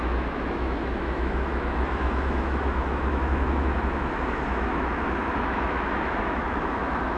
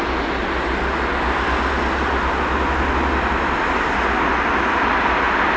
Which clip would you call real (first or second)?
second